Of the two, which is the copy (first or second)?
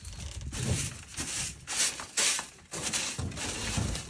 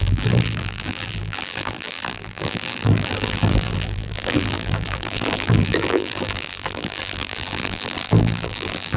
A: second